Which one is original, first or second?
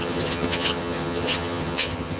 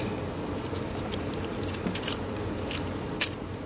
second